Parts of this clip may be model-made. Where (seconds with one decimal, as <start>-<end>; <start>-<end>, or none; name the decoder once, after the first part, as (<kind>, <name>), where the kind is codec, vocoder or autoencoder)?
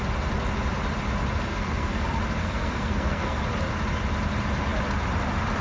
1.5-2.0 (codec, SNAC); 2.4-3.4